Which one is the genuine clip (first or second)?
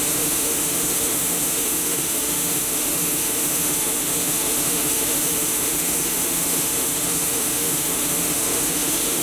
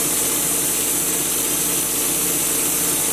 second